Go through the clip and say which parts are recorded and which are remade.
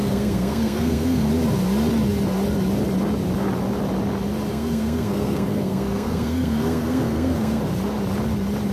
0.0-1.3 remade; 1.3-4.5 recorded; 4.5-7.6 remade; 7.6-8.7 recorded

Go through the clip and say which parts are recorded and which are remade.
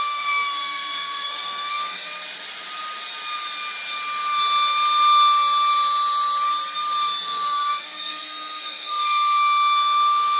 0.0-2.1 remade; 2.1-7.2 recorded; 7.2-10.4 remade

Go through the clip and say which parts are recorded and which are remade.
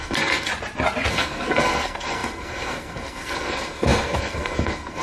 0.0-0.5 remade; 0.5-1.1 recorded; 1.1-5.0 remade